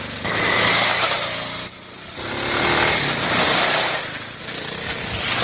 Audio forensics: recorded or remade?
recorded